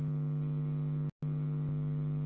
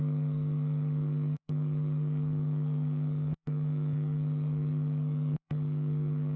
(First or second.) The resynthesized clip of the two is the second